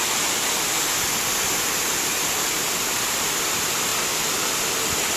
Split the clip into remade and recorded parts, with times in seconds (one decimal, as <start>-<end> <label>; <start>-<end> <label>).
0.0-5.2 recorded